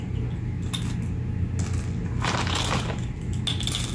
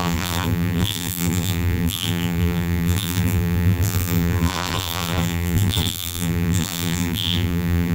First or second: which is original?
first